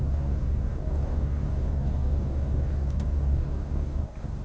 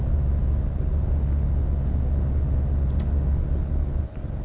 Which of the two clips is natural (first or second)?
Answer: second